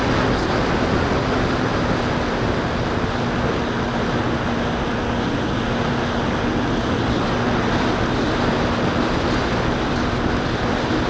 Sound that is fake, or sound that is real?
real